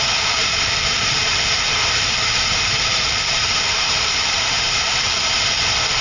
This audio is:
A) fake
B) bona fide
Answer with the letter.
A